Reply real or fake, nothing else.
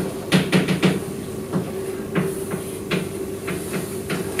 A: real